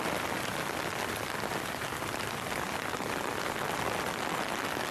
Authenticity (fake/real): real